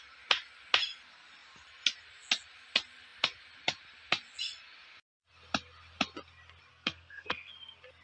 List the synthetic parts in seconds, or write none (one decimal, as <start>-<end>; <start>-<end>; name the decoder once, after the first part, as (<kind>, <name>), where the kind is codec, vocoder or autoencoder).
6.7-7.5 (codec, SNAC)